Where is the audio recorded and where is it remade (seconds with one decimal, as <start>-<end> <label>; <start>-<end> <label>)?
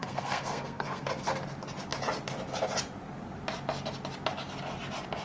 0.0-1.3 remade; 1.3-5.2 recorded